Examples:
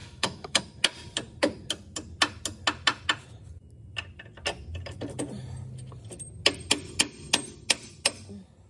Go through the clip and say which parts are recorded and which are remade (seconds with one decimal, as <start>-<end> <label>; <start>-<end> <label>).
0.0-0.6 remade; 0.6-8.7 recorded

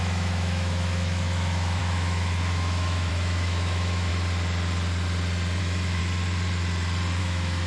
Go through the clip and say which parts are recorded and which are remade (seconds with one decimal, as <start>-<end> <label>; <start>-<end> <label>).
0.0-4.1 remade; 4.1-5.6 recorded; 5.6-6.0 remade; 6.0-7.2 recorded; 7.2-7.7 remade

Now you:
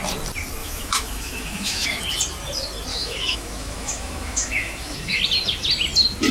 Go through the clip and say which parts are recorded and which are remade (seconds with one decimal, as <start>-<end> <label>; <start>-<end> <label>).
0.0-0.6 recorded; 0.6-2.0 remade; 2.0-2.9 recorded; 2.9-5.2 remade; 5.2-6.3 recorded